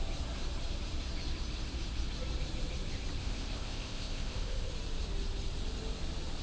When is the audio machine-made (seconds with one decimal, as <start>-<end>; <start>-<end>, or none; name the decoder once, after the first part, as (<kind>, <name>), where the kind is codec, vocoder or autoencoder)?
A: 3.2-4.7 (codec, ZipCodec)